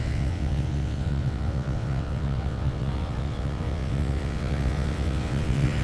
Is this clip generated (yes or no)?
yes